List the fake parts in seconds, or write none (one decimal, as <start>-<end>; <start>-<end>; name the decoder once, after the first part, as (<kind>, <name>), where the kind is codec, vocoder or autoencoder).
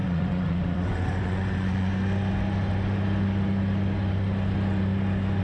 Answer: 0.0-1.9 (vocoder, Vocos)